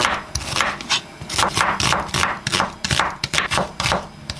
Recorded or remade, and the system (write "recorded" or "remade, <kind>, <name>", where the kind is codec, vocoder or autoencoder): recorded